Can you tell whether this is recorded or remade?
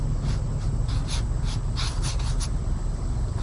recorded